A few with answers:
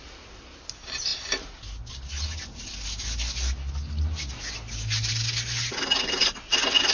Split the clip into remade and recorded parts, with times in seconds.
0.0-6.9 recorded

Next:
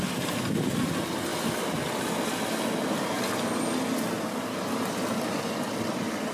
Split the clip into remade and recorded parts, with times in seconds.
0.0-6.3 recorded

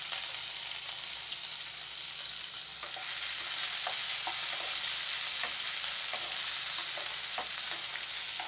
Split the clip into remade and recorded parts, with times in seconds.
0.0-8.5 recorded